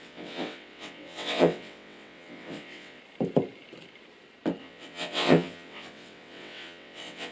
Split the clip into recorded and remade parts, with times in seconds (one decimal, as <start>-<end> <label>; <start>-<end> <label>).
0.0-3.0 remade; 3.0-4.6 recorded; 4.6-7.3 remade